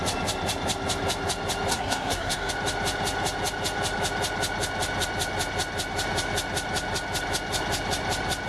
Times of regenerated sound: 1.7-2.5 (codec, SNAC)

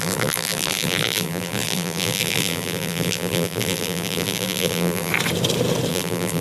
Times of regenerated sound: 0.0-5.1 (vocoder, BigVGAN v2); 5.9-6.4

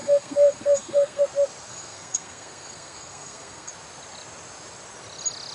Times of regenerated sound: 0.0-1.2 (codec, SNAC); 1.7-3.7

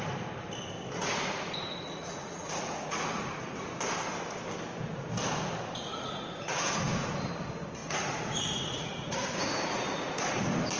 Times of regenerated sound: 1.0-3.4 (vocoder, Vocos); 5.9-7.3; 7.8-10.3

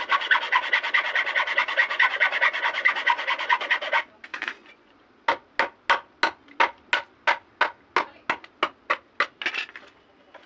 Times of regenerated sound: 1.8-3.6 (vocoder, Vocos); 4.3-5.1